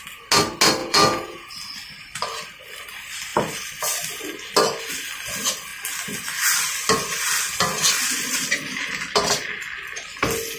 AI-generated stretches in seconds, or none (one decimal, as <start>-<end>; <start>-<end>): 0.8-1.5

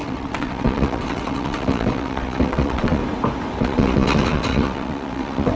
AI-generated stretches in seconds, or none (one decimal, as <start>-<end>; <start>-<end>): 0.0-3.0; 3.6-5.6

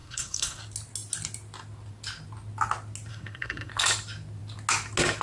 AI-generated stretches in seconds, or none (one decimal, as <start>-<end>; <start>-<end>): 0.0-0.6; 3.1-3.7

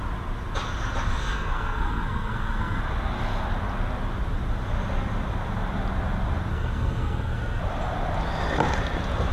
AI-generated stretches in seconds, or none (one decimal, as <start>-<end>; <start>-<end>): 1.2-2.8; 6.5-7.6